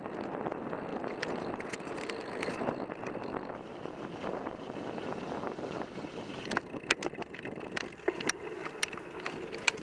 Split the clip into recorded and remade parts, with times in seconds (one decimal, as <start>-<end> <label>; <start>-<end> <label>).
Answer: 0.0-9.8 recorded